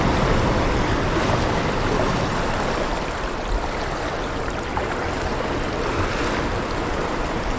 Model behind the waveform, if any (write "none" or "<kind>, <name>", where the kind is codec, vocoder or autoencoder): none